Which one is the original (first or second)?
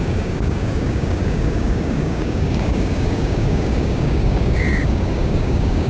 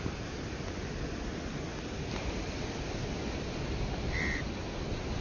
second